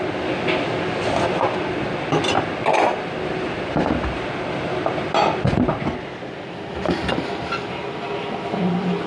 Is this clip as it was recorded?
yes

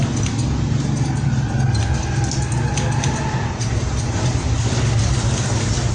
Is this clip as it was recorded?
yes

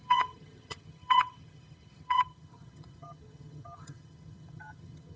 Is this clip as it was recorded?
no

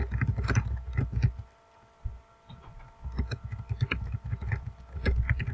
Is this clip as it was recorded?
yes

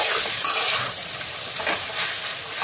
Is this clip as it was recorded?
yes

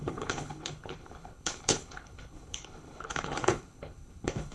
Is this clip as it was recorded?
no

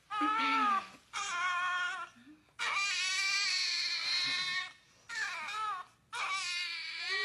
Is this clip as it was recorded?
yes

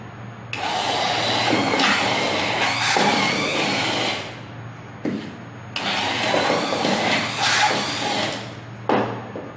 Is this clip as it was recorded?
yes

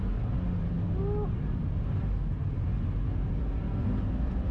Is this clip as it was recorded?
yes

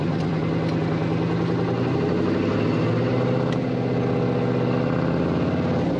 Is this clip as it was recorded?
yes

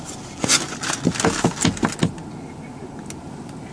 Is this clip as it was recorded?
yes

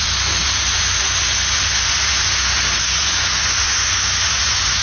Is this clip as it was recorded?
no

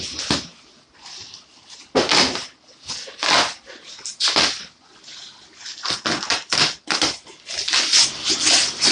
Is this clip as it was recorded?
yes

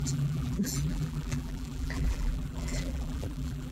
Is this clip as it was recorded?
no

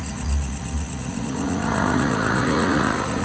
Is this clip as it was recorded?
no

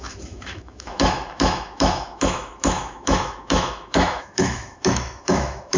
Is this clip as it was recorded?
no